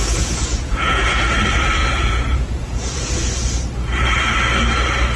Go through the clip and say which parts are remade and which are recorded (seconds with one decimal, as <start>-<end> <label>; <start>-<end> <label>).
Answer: 0.0-1.2 remade; 1.2-1.8 recorded; 1.8-3.3 remade; 3.3-5.2 recorded